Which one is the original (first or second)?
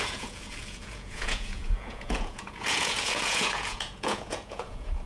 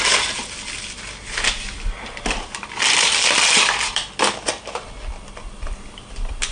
second